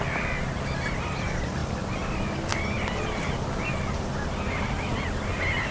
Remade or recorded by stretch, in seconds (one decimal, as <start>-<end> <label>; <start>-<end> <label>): 0.0-5.7 recorded